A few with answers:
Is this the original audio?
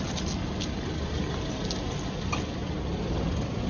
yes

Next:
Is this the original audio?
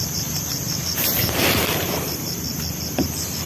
no